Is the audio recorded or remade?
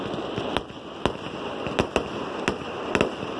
recorded